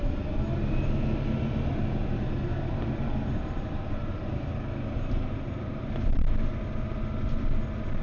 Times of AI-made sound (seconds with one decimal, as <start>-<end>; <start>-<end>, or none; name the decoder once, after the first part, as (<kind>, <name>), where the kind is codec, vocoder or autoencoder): 1.7-6.5 (vocoder, BigVGAN v2)